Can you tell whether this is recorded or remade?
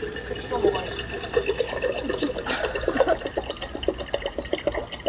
recorded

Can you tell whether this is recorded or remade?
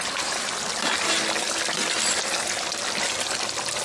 recorded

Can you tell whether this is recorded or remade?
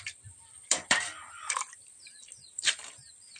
remade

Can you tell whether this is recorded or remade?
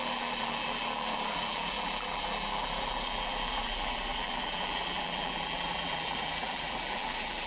remade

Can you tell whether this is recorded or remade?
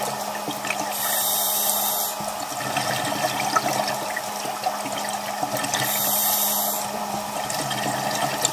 recorded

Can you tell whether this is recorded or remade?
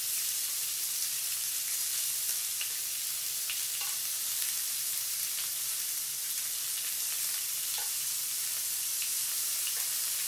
remade